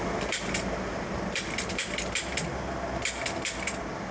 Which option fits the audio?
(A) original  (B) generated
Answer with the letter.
A